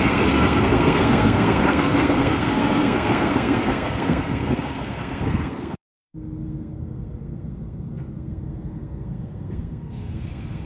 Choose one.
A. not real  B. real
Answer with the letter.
A